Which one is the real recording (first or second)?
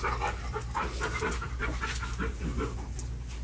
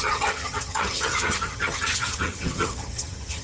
first